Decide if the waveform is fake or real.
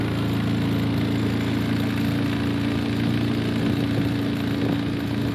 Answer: real